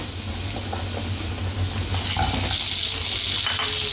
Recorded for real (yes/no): yes